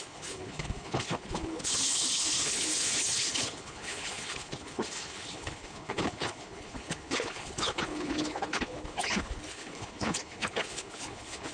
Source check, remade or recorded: remade